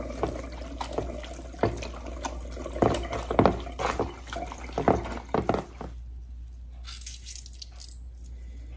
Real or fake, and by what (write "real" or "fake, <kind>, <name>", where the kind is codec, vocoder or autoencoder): real